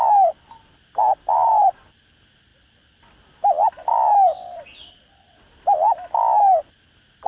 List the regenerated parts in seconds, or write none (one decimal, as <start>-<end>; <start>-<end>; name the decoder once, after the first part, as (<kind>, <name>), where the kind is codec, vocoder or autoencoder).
none